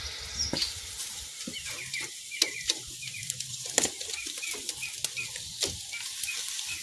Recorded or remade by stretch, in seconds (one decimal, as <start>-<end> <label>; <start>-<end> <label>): 0.0-0.6 recorded; 0.6-4.7 remade; 4.7-6.8 recorded